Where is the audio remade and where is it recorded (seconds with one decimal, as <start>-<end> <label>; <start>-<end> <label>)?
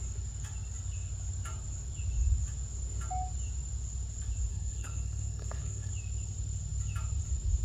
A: 0.0-4.5 recorded; 4.5-5.9 remade; 5.9-7.6 recorded